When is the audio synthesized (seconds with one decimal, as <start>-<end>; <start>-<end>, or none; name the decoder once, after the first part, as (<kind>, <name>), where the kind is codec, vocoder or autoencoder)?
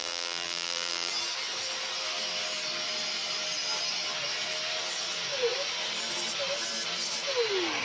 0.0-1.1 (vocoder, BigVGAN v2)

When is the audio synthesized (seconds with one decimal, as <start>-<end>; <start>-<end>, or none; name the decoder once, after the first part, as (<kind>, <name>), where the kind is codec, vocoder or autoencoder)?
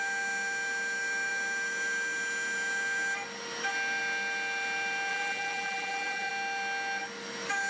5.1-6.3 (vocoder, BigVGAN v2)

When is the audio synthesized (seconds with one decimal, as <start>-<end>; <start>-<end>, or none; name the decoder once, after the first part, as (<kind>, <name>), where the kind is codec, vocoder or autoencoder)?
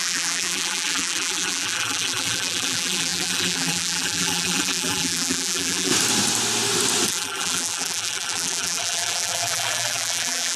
0.0-5.9 (vocoder, BigVGAN v2); 7.1-10.6